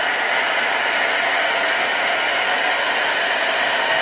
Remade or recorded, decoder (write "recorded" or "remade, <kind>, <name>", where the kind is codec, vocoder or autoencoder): recorded